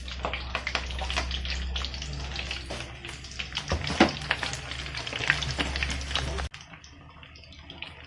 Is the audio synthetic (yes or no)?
no